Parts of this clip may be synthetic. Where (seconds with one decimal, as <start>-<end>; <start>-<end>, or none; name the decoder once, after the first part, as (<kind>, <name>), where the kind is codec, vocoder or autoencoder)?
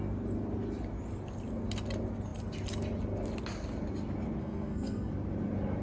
4.4-5.1 (codec, SNAC)